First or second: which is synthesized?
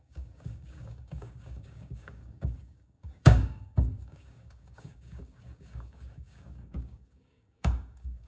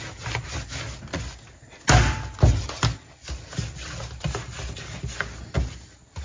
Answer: first